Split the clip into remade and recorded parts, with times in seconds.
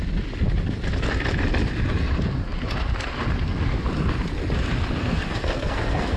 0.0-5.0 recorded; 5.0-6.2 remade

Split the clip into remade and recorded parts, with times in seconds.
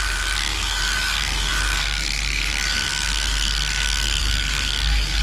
0.0-5.2 remade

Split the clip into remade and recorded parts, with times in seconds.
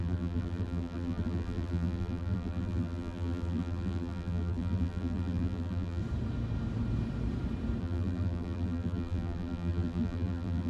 0.0-6.0 remade; 6.0-7.8 recorded; 7.8-10.7 remade